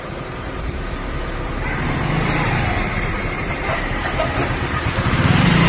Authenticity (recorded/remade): remade